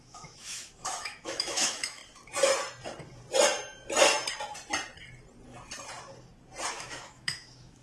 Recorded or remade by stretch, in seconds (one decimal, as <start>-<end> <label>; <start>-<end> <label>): 0.0-2.0 remade; 2.0-6.7 recorded; 6.7-7.8 remade